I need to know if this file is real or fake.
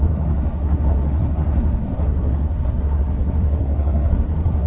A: fake